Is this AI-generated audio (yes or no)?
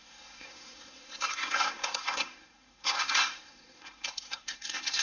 yes